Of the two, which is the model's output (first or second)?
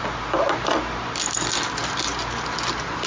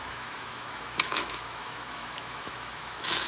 second